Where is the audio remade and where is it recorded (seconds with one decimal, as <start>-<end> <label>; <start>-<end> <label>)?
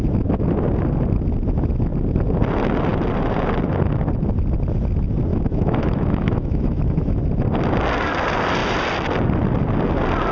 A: 0.0-5.3 recorded; 5.3-7.2 remade; 7.2-10.3 recorded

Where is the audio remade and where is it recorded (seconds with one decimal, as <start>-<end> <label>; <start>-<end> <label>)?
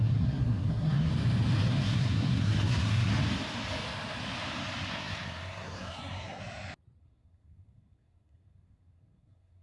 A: 0.0-1.1 remade; 1.1-1.7 recorded; 1.7-3.1 remade; 3.1-4.9 recorded; 4.9-6.4 remade; 6.4-7.0 recorded; 7.0-9.6 remade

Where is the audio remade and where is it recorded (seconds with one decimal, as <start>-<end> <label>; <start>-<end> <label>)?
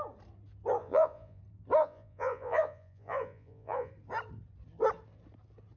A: 0.0-0.8 recorded; 0.8-1.4 remade; 1.4-1.8 recorded; 1.8-3.9 remade; 3.9-5.8 recorded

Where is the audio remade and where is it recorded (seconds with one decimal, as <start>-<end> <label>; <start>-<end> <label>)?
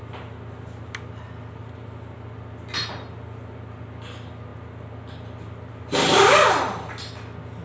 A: 0.0-7.6 recorded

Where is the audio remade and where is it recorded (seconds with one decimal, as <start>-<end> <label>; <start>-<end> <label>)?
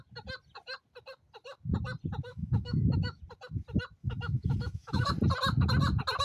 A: 0.0-2.3 recorded; 2.3-3.2 remade; 3.2-4.0 recorded; 4.0-5.1 remade; 5.1-6.2 recorded